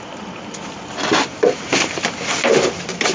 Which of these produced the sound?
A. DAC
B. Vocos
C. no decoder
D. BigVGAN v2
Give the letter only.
C